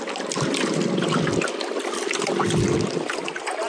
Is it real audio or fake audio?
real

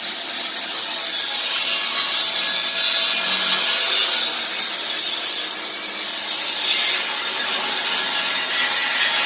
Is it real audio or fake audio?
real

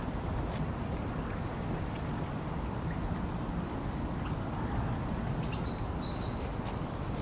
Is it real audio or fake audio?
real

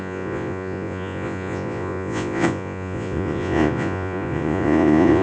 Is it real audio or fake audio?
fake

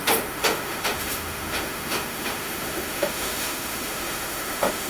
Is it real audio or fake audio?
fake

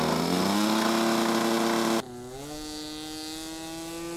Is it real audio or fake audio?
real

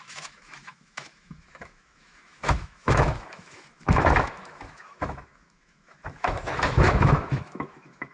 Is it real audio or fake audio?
fake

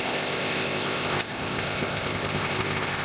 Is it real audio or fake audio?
fake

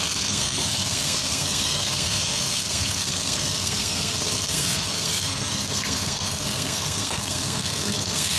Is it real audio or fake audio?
fake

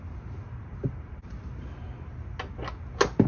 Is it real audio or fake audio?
real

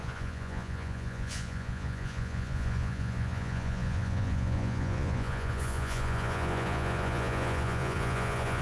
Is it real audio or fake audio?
fake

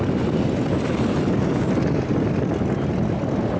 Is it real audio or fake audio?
real